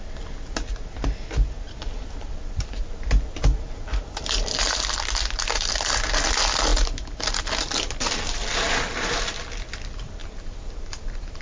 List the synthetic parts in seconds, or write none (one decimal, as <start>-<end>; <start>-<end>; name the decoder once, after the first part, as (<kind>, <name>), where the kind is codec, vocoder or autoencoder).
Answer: 10.2-11.4 (vocoder, BigVGAN v2)